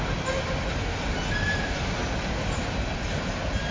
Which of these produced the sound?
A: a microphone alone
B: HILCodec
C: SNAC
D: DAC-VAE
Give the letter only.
A